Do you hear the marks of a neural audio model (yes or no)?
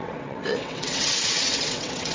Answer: yes